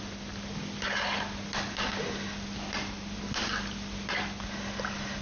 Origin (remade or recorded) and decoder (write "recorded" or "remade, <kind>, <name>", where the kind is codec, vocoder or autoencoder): recorded